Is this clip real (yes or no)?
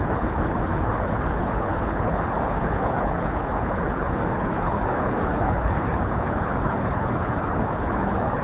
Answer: no